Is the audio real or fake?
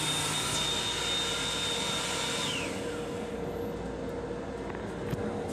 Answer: real